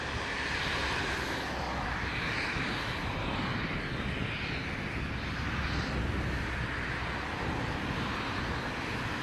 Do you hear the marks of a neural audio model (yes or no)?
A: no